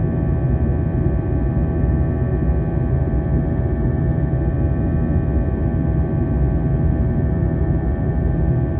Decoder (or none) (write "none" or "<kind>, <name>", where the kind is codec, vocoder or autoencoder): none